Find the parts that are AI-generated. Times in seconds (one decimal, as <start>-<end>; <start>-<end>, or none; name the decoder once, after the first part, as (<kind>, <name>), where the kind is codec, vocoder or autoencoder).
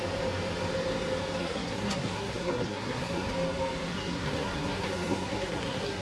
1.4-3.3 (codec, SNAC); 3.9-6.0